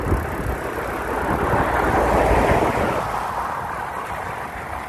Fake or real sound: real